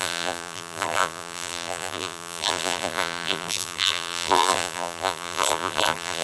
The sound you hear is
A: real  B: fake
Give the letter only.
B